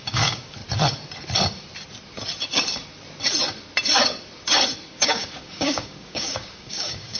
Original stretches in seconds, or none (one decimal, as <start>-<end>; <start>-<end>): 0.6-4.9

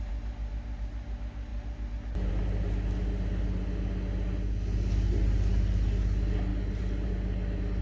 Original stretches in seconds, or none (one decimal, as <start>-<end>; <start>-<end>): 0.0-6.5; 7.1-7.8

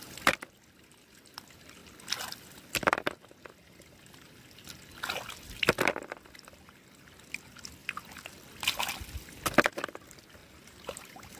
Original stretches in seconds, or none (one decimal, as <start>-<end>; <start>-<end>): 0.0-10.4

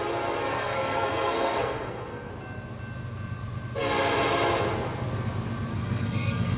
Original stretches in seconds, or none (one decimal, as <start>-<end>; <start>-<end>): 0.0-0.5; 2.3-5.7

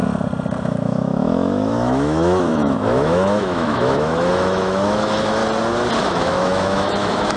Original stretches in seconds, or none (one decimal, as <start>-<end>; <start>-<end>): 0.0-0.6; 5.4-6.0